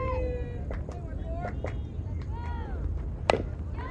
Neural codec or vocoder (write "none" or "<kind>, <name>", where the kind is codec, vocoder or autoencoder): none